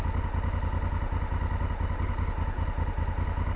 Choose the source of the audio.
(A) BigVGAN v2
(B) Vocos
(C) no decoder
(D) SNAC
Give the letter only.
C